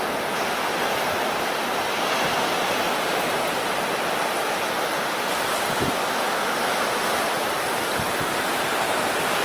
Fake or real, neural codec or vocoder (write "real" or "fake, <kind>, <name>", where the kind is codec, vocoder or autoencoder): real